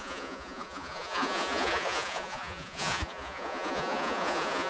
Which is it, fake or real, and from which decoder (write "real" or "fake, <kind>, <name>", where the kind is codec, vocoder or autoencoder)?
fake, vocoder, Vocos